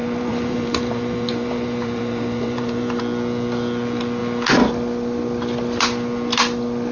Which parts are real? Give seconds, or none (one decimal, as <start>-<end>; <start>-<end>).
3.0-6.9